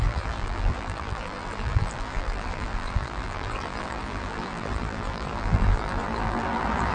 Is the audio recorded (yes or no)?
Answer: no